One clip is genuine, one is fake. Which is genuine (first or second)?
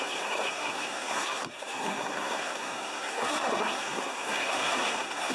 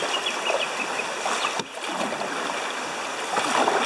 second